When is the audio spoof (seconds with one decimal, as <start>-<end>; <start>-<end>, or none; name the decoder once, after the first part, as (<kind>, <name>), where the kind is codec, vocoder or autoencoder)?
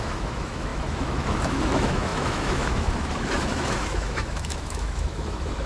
0.0-5.7 (autoencoder, DAC-VAE)